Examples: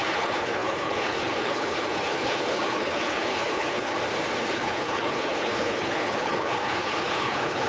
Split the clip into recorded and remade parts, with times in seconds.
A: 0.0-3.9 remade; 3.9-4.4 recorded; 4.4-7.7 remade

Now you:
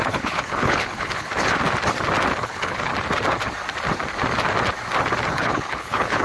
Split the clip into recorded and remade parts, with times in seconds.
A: 0.0-1.3 remade; 1.3-2.4 recorded; 2.4-2.9 remade; 2.9-5.3 recorded; 5.3-6.2 remade

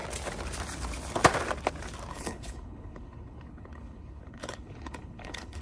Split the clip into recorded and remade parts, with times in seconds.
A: 0.0-2.1 recorded; 2.1-5.6 remade

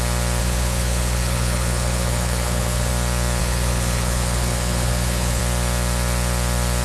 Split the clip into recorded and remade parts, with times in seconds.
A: 0.0-0.4 recorded; 0.4-2.9 remade; 2.9-3.4 recorded; 3.4-5.4 remade; 5.4-6.8 recorded

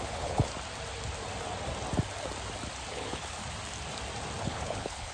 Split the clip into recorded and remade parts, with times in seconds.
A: 0.0-0.5 remade; 0.5-2.9 recorded; 2.9-3.4 remade; 3.4-4.4 recorded; 4.4-5.1 remade

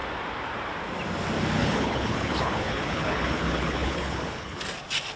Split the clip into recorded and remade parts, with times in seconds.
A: 0.0-1.6 recorded; 1.6-4.6 remade; 4.6-5.2 recorded

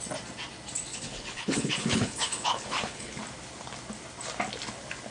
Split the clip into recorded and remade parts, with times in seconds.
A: 0.0-0.9 recorded; 0.9-3.2 remade; 3.2-5.1 recorded